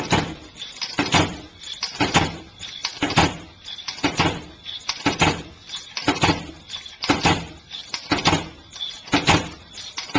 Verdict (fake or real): fake